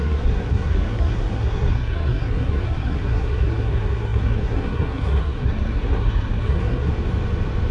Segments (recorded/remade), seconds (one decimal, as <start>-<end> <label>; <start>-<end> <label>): 0.0-6.9 remade; 6.9-7.7 recorded